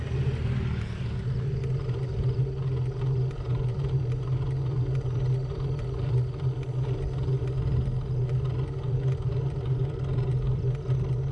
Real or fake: real